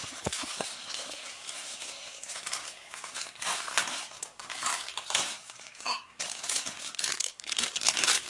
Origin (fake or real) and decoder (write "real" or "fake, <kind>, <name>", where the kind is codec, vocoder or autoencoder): fake, codec, SNAC